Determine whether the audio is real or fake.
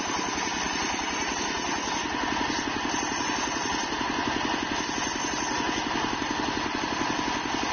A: real